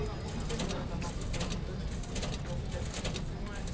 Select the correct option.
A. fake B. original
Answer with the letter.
B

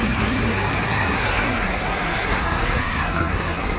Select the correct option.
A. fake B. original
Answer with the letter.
A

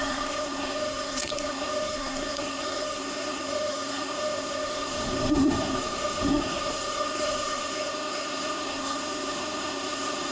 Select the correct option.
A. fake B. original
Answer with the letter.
A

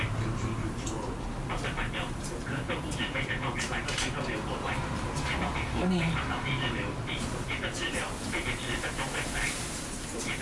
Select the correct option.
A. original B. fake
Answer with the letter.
B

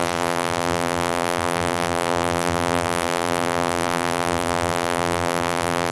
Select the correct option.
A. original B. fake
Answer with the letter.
B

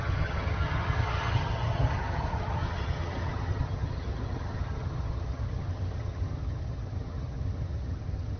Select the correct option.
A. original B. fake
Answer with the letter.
B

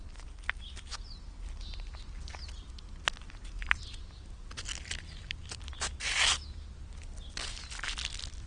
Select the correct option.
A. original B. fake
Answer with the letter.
A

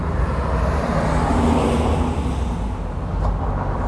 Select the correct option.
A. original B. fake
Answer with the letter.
A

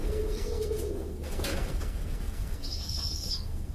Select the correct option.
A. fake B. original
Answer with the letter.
A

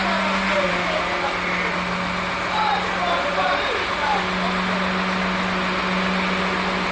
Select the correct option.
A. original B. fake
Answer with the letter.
A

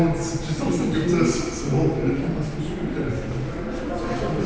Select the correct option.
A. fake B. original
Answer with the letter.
B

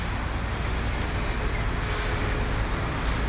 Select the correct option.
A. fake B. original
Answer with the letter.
B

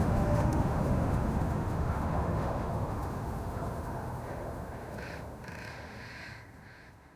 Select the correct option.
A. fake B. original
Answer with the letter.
A